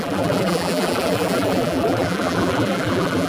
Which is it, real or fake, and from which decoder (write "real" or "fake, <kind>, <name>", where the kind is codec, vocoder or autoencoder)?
fake, vocoder, BigVGAN v2